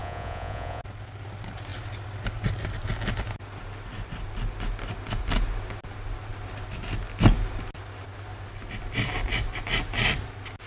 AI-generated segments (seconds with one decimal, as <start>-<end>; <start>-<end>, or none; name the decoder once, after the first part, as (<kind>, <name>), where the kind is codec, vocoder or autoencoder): 0.0-0.8 (vocoder, Vocos)